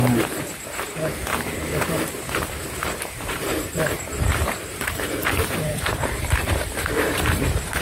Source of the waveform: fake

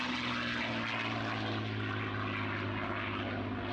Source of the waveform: real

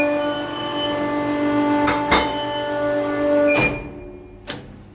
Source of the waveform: real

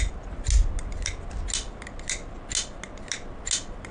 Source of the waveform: real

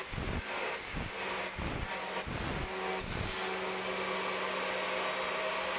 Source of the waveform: real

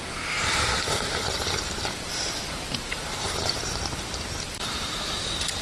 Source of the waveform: fake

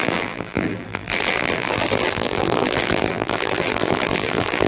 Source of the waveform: fake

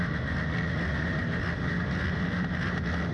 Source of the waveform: real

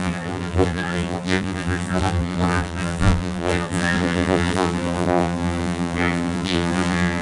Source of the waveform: fake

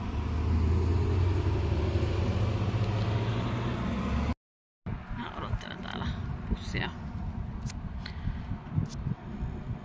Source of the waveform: real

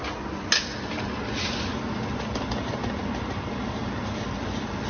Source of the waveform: real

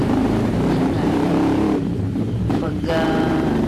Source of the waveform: fake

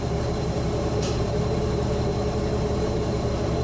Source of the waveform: fake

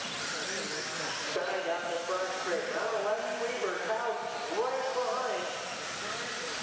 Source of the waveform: real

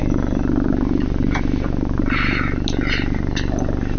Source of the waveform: real